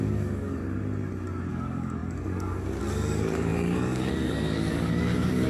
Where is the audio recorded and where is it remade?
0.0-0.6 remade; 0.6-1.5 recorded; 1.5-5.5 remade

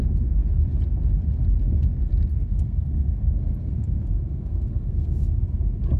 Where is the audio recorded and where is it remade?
0.0-2.3 recorded; 2.3-5.4 remade; 5.4-6.0 recorded

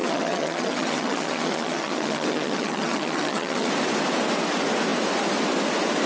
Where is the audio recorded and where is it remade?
0.0-3.7 remade; 3.7-6.1 recorded

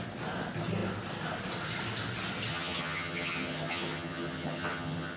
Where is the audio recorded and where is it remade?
0.0-2.5 recorded; 2.5-5.2 remade